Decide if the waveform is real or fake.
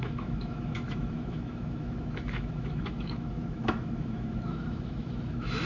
fake